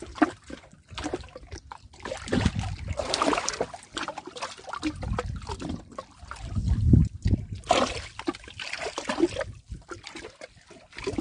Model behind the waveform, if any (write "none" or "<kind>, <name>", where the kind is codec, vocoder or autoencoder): none